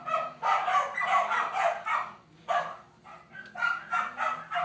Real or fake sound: real